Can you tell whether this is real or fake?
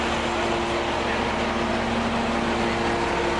real